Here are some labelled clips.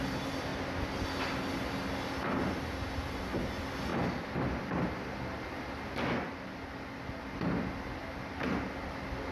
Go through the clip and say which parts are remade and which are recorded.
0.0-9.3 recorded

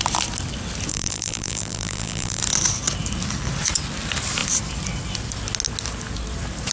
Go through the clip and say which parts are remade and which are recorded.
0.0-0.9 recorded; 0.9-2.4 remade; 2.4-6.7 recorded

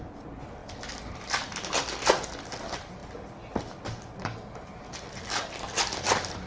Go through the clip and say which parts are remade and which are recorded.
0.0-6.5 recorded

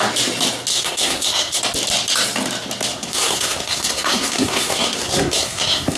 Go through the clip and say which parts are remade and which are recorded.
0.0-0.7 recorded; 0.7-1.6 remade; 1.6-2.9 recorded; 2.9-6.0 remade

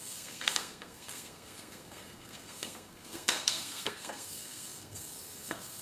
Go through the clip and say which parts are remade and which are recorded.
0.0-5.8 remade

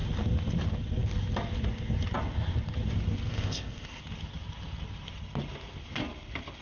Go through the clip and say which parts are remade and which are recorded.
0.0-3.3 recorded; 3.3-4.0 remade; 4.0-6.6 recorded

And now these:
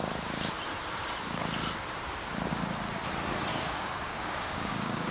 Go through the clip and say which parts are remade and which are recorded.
0.0-3.5 recorded; 3.5-5.1 remade

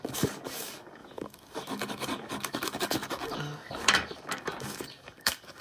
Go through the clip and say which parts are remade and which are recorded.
0.0-5.6 remade